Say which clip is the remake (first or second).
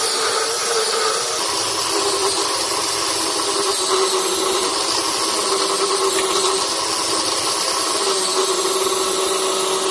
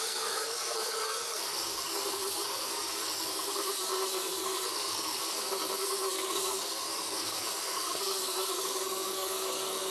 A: second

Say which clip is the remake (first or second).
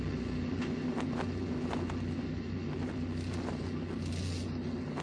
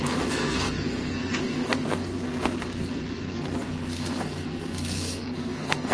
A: second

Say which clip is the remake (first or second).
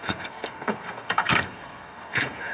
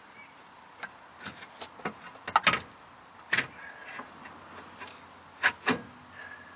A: first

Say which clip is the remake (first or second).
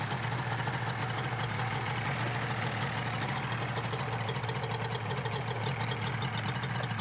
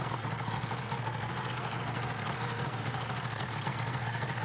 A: second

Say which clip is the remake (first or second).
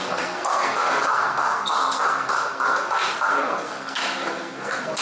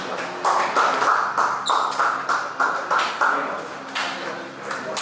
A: first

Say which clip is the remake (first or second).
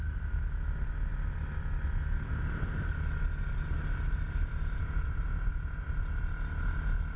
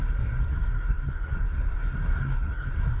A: second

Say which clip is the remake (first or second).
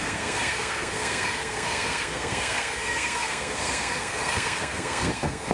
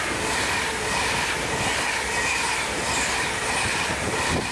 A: first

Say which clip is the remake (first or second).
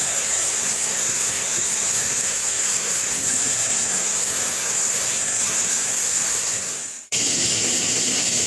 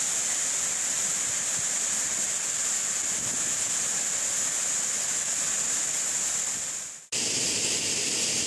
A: first